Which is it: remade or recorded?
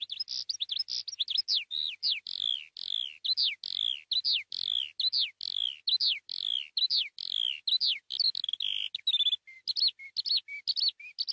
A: recorded